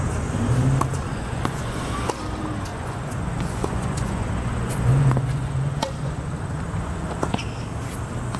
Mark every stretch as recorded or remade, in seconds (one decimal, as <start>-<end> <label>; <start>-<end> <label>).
0.0-1.1 recorded; 1.1-2.1 remade; 2.1-2.7 recorded; 2.7-7.4 remade; 7.4-8.4 recorded